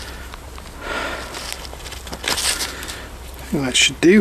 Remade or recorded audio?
recorded